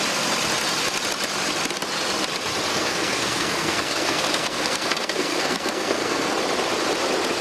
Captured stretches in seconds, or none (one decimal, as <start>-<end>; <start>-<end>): 0.0-2.7; 6.3-7.4